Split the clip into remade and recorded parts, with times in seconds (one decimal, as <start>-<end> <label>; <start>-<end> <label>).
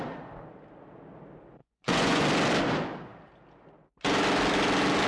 0.0-1.6 recorded; 1.6-2.2 remade; 2.2-5.1 recorded